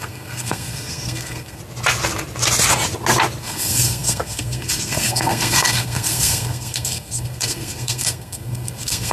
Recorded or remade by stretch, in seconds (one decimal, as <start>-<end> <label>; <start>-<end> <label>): 0.0-1.6 remade; 1.6-3.4 recorded; 3.4-9.1 remade